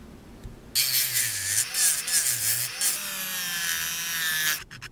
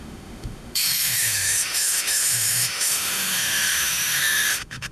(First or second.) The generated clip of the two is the second